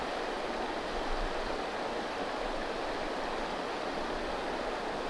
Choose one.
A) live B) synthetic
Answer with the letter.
A